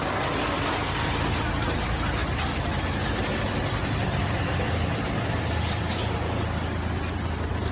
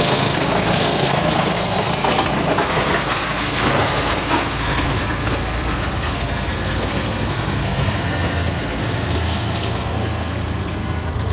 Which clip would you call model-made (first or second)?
second